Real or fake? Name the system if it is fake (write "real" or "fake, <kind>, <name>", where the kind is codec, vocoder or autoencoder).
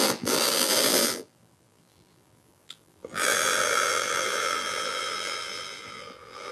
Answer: fake, vocoder, BigVGAN v2